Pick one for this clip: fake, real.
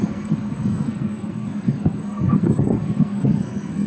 fake